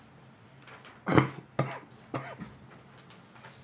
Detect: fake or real real